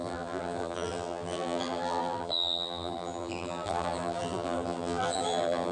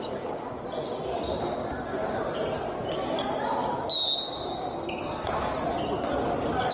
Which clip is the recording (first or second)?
second